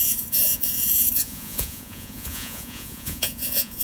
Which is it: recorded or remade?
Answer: remade